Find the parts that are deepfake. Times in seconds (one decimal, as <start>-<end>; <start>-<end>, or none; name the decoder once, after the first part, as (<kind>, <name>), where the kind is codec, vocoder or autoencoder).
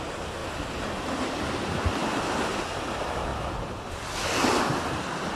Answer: 0.4-1.4 (vocoder, BigVGAN v2); 2.0-2.6; 3.3-3.9